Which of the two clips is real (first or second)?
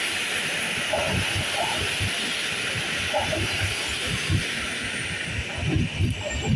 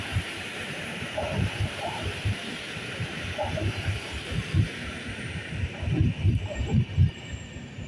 first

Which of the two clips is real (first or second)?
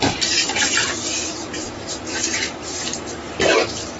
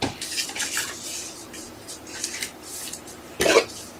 second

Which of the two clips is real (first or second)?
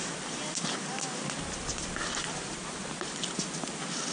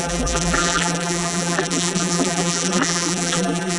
first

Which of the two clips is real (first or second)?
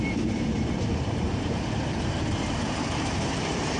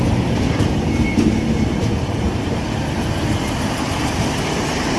second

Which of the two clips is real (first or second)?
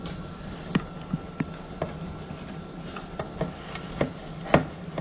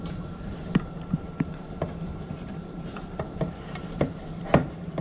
first